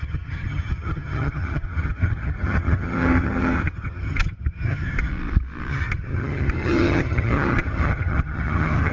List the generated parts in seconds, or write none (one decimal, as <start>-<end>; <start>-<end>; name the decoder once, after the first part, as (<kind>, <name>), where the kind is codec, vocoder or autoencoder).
0.0-5.1 (vocoder, HiFi-GAN); 5.7-8.9

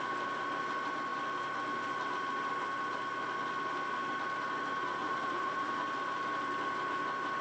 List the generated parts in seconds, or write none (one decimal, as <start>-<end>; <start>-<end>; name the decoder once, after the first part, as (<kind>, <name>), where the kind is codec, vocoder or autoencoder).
5.0-5.7 (vocoder, Vocos)

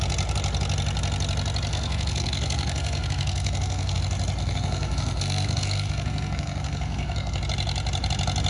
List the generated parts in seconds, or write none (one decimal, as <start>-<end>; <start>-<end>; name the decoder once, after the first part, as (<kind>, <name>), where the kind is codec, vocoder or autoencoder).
1.7-4.0 (codec, SNAC); 4.4-7.4